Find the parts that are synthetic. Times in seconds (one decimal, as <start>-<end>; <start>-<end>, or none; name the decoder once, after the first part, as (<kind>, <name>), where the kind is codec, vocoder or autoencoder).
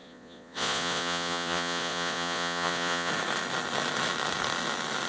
0.0-3.1 (vocoder, Vocos)